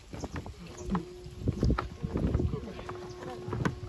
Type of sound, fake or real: real